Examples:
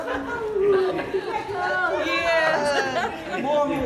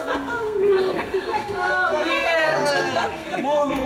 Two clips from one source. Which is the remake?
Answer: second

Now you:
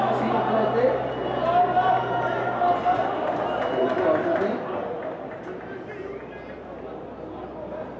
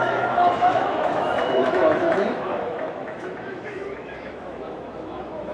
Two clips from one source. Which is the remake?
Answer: second